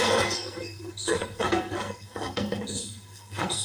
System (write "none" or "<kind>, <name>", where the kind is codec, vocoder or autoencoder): codec, SNAC